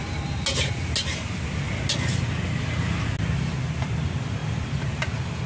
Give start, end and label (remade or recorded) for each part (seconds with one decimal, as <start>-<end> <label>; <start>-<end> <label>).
0.0-4.4 recorded; 4.4-5.5 remade

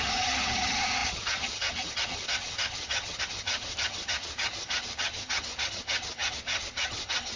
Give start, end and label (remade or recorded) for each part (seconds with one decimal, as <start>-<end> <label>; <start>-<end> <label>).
0.0-7.4 remade

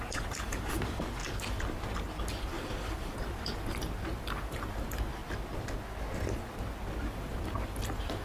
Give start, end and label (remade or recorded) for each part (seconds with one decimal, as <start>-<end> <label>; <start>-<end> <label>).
0.0-1.2 remade; 1.2-2.3 recorded; 2.3-5.2 remade; 5.2-7.1 recorded; 7.1-8.2 remade

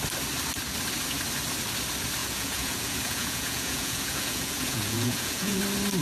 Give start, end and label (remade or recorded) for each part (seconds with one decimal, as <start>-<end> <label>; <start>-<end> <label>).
0.0-2.2 recorded; 2.2-5.6 remade; 5.6-6.0 recorded

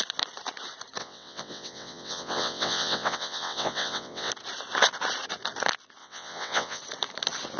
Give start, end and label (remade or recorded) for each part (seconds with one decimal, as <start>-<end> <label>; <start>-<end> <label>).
0.0-1.0 recorded; 1.0-4.3 remade; 4.3-6.0 recorded; 6.0-6.8 remade; 6.8-7.6 recorded

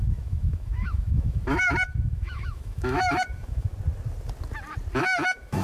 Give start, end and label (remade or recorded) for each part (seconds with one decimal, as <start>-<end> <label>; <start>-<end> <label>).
0.0-3.7 remade; 3.7-5.0 recorded; 5.0-5.6 remade

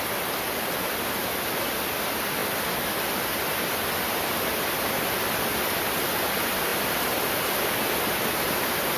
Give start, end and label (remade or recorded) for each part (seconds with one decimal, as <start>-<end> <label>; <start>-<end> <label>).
0.0-2.4 recorded; 2.4-5.8 remade; 5.8-9.0 recorded